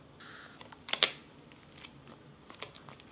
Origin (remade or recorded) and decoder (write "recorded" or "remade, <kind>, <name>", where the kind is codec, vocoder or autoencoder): recorded